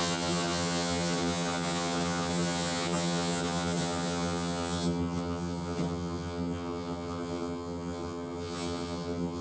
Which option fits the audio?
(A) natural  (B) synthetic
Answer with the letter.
B